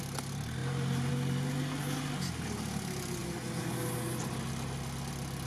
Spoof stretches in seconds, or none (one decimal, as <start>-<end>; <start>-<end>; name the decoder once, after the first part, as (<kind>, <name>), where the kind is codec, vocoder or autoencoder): none